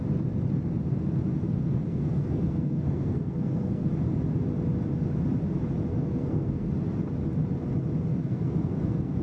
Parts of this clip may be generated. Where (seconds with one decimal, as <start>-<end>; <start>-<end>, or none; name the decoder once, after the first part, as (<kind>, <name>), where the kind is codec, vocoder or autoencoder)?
1.3-3.9 (codec, SNAC); 5.9-6.7; 8.1-9.2